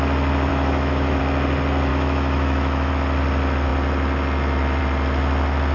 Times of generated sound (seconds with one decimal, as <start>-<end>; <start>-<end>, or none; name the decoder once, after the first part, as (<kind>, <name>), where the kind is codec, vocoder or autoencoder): 0.5-1.2 (autoencoder, DAC-VAE); 1.9-2.9